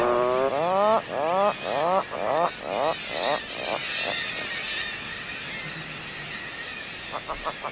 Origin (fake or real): real